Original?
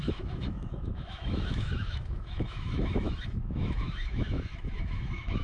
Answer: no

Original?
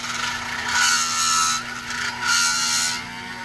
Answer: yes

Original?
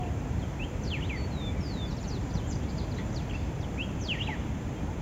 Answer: yes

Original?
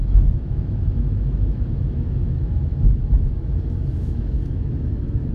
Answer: no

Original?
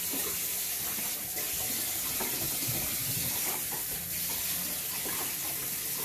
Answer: yes